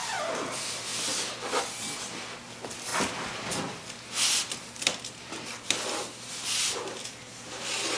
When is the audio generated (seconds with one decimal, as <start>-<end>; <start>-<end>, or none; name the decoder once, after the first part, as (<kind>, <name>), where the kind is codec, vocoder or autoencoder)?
0.0-0.5 (vocoder, BigVGAN v2)